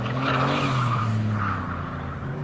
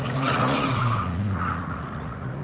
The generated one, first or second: second